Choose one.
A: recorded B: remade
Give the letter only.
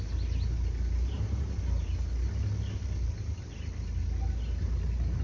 A